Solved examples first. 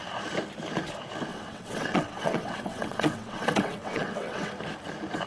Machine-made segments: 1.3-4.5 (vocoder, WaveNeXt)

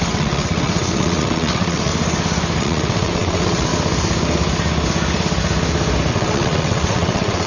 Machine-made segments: 0.0-1.9 (vocoder, WaveNeXt); 2.6-3.7; 6.1-7.5

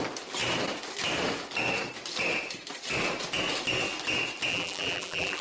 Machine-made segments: 4.5-5.4 (vocoder, BigVGAN v2)

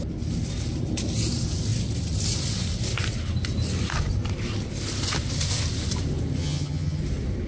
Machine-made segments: 6.4-7.0 (vocoder, HiFi-GAN)

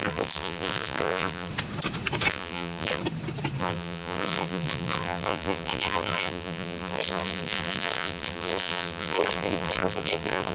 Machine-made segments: 0.0-1.5 (vocoder, BigVGAN v2); 2.3-3.0; 3.6-10.5